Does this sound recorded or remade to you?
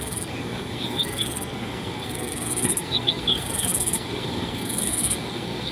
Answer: remade